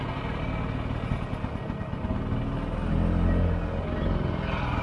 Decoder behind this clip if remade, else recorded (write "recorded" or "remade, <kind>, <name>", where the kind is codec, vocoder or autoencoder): recorded